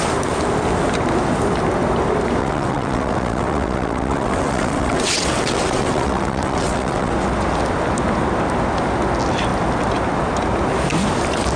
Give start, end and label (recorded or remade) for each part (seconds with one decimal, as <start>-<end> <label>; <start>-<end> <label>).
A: 0.0-2.4 recorded; 2.4-7.1 remade; 7.1-11.6 recorded